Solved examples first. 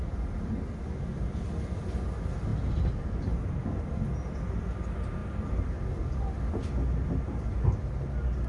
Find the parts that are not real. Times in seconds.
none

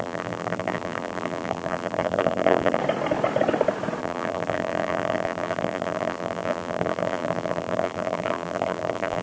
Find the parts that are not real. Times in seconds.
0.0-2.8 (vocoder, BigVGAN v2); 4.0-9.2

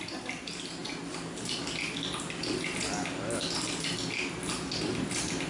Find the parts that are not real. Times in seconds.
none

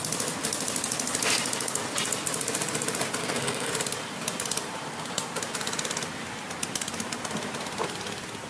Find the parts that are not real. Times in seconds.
3.2-3.7 (codec, SNAC)